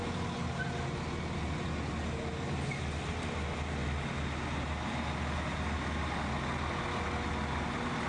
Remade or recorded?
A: recorded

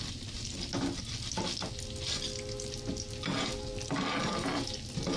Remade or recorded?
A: recorded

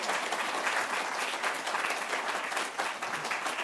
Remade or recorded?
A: recorded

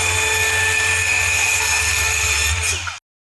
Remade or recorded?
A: recorded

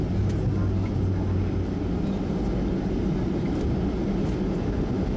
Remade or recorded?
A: recorded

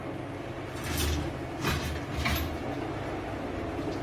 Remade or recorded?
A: recorded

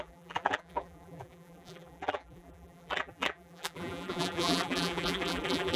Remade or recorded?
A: remade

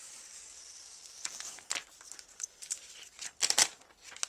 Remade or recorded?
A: recorded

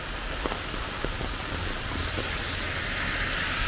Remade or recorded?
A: recorded